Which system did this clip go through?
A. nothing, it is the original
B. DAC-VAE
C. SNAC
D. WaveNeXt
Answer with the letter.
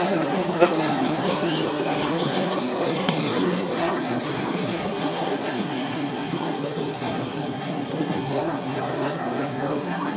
C